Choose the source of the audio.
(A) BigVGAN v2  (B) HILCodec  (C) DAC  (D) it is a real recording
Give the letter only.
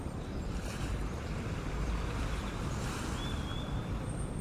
A